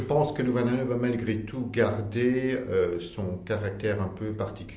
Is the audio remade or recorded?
recorded